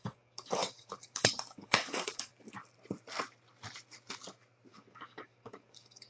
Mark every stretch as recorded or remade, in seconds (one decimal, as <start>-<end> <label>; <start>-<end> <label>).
0.0-2.3 remade; 2.3-4.7 recorded; 4.7-6.1 remade